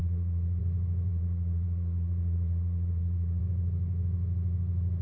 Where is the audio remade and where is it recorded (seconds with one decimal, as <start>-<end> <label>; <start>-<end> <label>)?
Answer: 0.0-0.6 remade; 0.6-1.1 recorded; 1.1-3.4 remade; 3.4-5.0 recorded